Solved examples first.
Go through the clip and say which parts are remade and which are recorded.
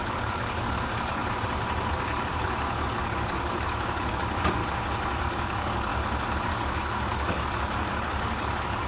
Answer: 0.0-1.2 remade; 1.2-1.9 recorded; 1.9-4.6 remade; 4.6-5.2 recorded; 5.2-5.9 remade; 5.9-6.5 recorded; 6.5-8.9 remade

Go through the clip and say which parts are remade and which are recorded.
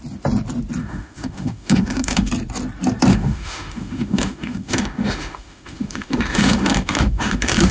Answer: 0.0-0.8 recorded; 0.8-2.3 remade; 2.3-3.1 recorded; 3.1-7.7 remade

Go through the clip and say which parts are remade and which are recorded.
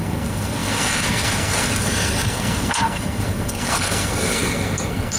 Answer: 0.0-5.2 remade